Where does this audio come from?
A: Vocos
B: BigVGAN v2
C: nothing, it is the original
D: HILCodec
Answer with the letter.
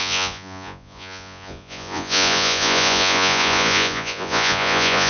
A